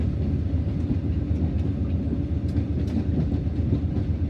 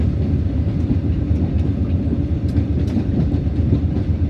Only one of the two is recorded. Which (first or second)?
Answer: first